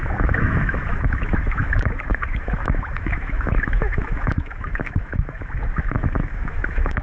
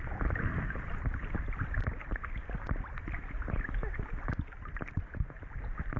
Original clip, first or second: second